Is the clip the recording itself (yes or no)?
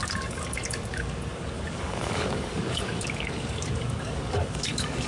no